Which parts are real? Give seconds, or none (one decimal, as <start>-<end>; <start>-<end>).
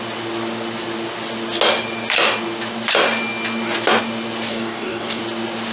0.0-4.5; 5.2-5.7